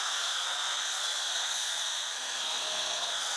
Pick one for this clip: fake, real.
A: fake